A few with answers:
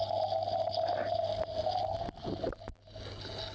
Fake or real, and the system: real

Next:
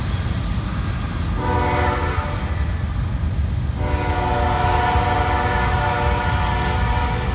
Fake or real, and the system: real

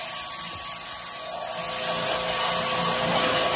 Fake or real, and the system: real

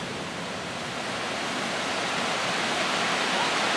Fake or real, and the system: real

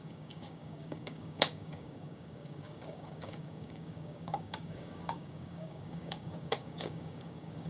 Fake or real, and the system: fake, codec, DAC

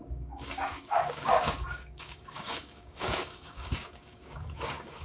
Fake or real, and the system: fake, codec, DAC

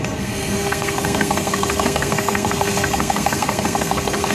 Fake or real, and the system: fake, codec, SNAC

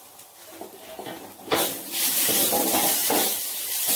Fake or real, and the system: real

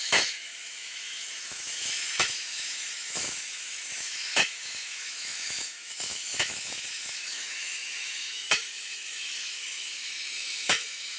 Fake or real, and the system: fake, autoencoder, DAC-VAE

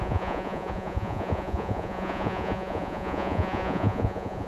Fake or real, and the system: fake, vocoder, Vocos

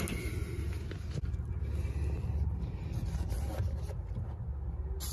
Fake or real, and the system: real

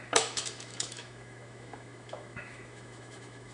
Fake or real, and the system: fake, autoencoder, DAC-VAE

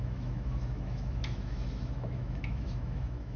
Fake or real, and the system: fake, autoencoder, DAC-VAE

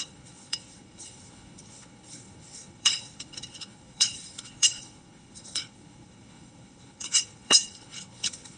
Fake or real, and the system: fake, codec, HILCodec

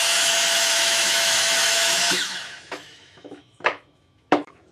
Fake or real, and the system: fake, autoencoder, DAC-VAE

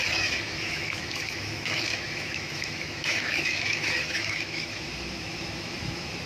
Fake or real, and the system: fake, autoencoder, DAC-VAE